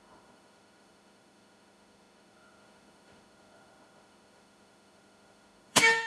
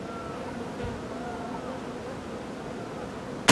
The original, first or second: second